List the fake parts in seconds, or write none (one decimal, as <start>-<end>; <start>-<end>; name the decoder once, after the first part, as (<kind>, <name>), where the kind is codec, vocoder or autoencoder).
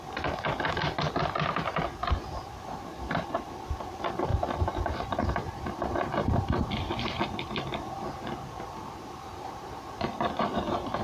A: 2.9-3.5 (vocoder, BigVGAN v2); 4.3-7.2; 8.8-9.9